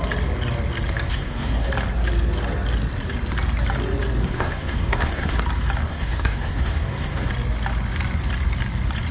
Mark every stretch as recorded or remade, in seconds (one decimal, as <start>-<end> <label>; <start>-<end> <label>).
0.0-1.1 recorded; 1.1-1.7 remade; 1.7-4.2 recorded; 4.2-5.4 remade; 5.4-5.9 recorded; 5.9-7.3 remade; 7.3-9.1 recorded